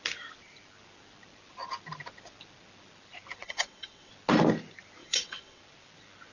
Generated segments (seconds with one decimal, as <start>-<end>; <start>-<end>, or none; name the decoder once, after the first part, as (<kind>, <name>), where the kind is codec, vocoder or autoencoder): 3.4-4.1 (vocoder, WaveNeXt); 5.0-5.6